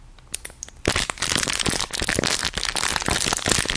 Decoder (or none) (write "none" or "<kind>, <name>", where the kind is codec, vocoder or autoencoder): none